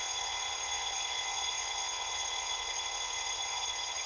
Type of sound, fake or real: fake